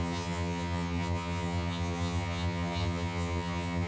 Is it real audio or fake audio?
fake